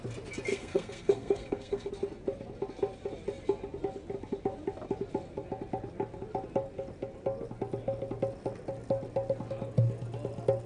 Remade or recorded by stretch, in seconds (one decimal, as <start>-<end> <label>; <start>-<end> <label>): 0.0-0.5 recorded; 0.5-1.9 remade; 1.9-10.7 recorded